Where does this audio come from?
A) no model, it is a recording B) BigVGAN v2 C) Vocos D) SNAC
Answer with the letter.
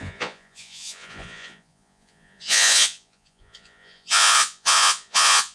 C